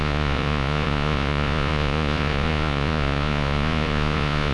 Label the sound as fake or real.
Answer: fake